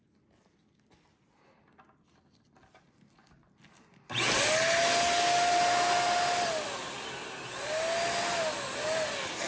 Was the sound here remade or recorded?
recorded